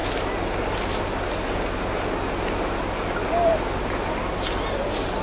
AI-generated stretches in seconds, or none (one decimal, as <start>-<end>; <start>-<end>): none